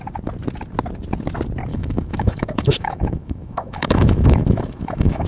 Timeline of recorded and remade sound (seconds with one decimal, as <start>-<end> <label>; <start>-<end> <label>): 0.0-1.7 recorded; 1.7-5.3 remade